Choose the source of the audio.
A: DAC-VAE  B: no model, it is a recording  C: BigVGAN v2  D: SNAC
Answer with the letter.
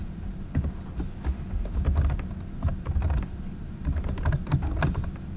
B